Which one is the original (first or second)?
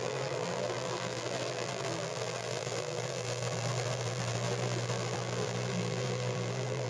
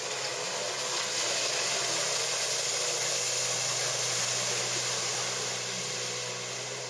second